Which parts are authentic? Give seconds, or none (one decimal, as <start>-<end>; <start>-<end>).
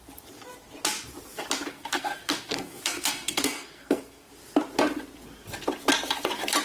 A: 0.0-1.7; 4.3-6.6